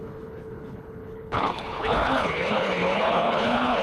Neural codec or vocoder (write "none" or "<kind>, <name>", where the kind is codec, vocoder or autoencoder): codec, HILCodec